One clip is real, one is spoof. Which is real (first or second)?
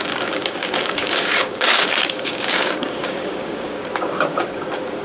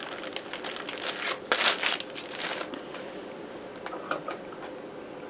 second